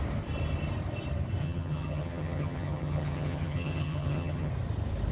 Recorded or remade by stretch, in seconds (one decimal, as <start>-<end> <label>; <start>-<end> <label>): 0.0-1.4 recorded; 1.4-4.5 remade; 4.5-5.1 recorded